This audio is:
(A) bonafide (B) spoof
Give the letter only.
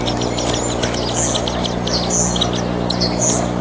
A